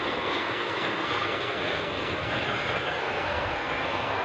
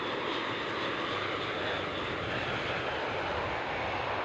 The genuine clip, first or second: second